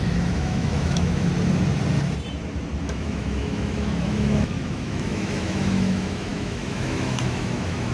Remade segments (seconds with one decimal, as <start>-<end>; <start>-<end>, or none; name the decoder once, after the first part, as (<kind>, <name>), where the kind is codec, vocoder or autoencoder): 0.0-1.3 (autoencoder, DAC-VAE); 2.8-7.9